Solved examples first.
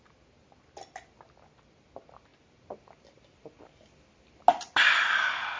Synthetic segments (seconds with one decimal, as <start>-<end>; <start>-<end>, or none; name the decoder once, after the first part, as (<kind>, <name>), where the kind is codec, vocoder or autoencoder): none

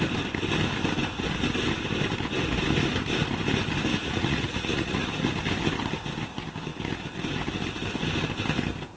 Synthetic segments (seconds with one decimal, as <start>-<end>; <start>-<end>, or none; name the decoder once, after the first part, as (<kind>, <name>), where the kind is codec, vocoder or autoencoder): 3.9-5.1 (vocoder, Vocos)

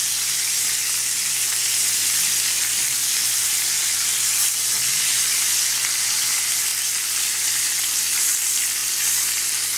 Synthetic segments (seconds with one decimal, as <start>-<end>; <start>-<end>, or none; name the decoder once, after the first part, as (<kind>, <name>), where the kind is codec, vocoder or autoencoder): none